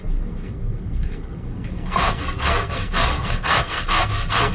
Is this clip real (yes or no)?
no